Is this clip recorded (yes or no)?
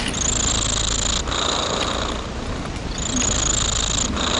yes